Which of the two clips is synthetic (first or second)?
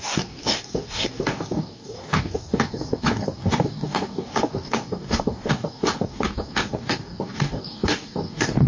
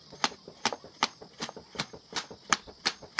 first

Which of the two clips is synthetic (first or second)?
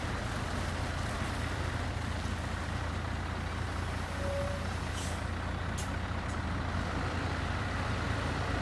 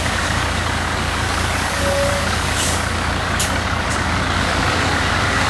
second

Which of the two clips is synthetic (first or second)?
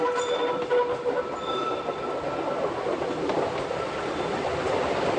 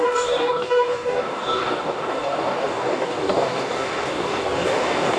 second